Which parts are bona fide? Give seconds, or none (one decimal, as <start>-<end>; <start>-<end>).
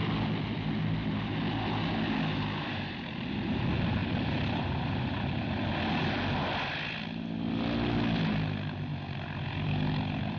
0.0-4.0; 5.5-8.9